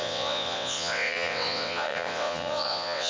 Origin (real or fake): fake